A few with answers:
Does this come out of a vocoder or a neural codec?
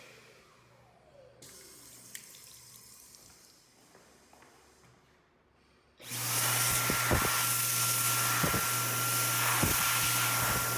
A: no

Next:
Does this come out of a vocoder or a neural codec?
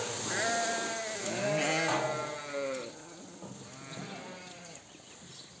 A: no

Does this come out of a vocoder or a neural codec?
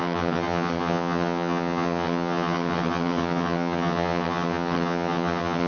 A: yes